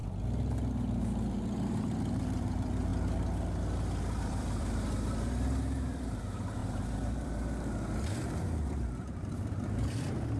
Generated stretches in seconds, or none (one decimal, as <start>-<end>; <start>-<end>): 1.3-2.9; 4.2-10.4